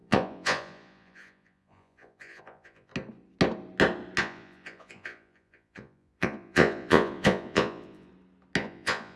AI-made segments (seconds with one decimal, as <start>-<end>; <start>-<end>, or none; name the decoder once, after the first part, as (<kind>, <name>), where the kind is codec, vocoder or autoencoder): 0.0-2.9 (vocoder, Vocos); 4.2-8.1; 8.6-9.2